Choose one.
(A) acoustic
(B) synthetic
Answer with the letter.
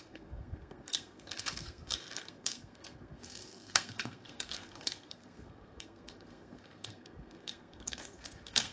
B